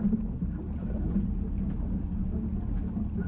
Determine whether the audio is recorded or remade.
recorded